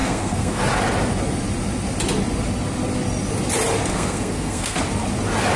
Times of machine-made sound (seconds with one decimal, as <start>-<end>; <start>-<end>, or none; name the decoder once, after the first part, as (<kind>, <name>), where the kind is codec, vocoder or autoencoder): 0.0-0.6 (codec, SNAC); 3.9-4.8